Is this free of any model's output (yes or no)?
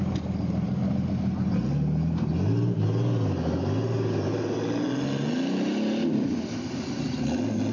yes